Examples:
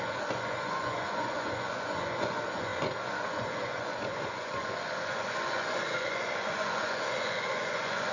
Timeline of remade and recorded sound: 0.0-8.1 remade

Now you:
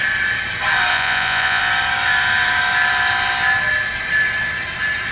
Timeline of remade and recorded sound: 0.0-0.9 recorded; 0.9-1.6 remade; 1.6-5.1 recorded

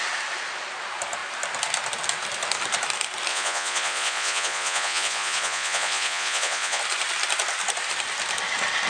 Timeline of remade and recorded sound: 0.0-3.3 recorded; 3.3-6.8 remade; 6.8-8.9 recorded

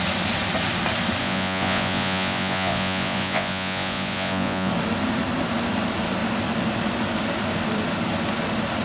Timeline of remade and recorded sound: 0.0-1.2 recorded; 1.2-4.7 remade; 4.7-8.8 recorded